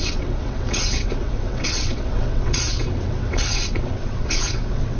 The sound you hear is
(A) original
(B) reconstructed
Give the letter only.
B